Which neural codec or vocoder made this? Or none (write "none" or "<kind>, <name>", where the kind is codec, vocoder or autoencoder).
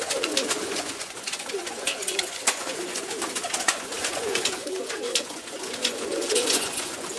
vocoder, Vocos